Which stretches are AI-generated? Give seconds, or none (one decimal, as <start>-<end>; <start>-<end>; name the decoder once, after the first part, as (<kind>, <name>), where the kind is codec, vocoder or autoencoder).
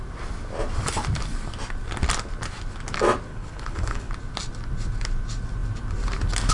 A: 3.3-4.1 (codec, HILCodec)